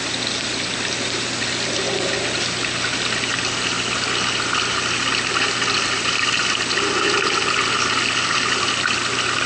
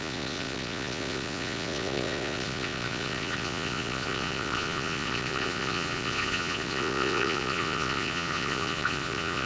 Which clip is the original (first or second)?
first